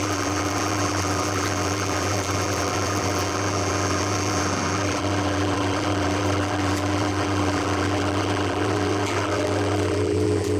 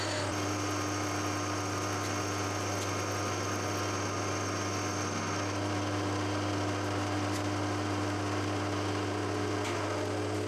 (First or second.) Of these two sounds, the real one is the second